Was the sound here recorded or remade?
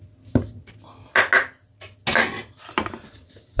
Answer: recorded